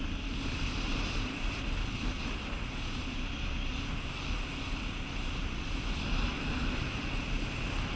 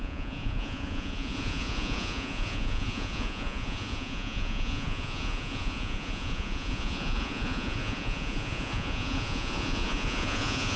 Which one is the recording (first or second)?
first